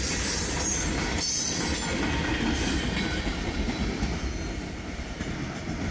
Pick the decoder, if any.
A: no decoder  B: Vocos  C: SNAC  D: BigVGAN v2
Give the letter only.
A